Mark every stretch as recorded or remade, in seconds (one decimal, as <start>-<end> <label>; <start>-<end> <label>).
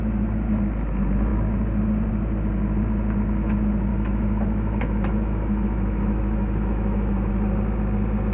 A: 0.0-3.9 recorded; 3.9-7.3 remade; 7.3-8.3 recorded